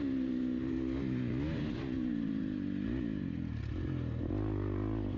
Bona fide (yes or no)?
yes